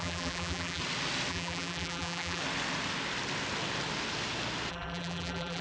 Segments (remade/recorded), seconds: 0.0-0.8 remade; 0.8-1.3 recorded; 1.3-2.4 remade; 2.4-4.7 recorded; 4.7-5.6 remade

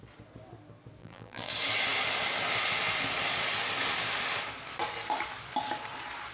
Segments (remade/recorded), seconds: 0.0-1.0 recorded; 1.0-1.5 remade; 1.5-6.3 recorded